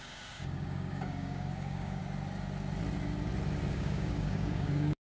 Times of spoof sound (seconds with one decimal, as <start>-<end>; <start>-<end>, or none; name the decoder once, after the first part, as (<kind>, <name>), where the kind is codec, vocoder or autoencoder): 0.0-2.0 (codec, DAC); 3.7-5.0